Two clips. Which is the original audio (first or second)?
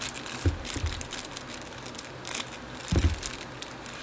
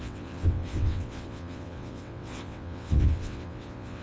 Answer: first